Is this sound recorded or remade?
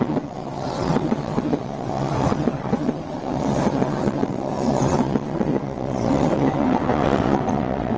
remade